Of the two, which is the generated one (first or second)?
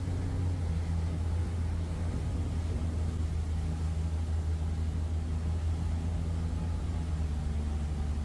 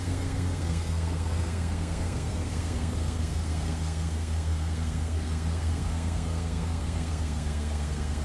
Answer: second